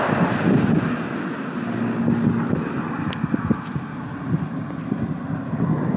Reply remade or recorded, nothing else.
recorded